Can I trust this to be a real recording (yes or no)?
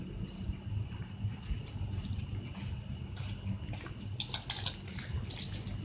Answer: yes